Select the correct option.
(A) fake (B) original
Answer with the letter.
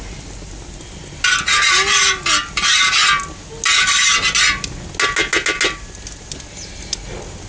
B